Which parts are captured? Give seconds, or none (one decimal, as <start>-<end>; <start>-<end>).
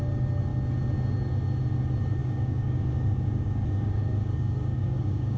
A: 0.0-2.2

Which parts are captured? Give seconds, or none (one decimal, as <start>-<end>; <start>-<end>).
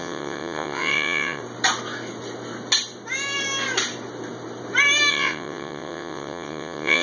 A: 1.4-5.1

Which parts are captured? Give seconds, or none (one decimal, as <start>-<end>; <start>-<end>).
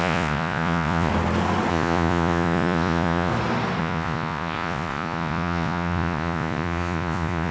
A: 1.1-1.7; 3.3-3.8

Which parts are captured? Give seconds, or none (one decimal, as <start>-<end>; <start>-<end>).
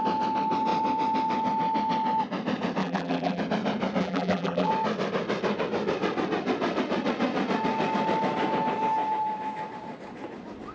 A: 0.0-2.8; 3.4-4.0; 4.7-10.7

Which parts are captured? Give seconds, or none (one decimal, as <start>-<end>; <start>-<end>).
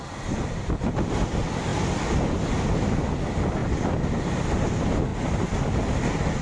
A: 0.0-5.1; 6.0-6.4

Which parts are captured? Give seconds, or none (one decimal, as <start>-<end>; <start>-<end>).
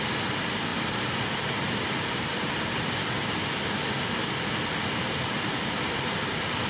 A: 0.0-6.7